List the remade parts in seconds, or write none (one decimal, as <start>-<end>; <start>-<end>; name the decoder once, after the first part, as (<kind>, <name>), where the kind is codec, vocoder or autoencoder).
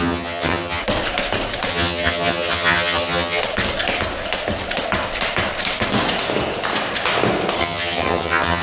0.0-0.8 (vocoder, HiFi-GAN); 1.7-3.4; 7.6-8.6